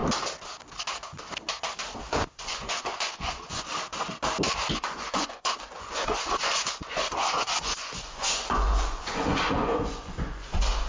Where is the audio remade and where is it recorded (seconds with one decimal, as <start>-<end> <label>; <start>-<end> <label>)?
0.0-2.0 recorded; 2.0-3.7 remade; 3.7-4.7 recorded; 4.7-10.9 remade